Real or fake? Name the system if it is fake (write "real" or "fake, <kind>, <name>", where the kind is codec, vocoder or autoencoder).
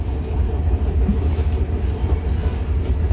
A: real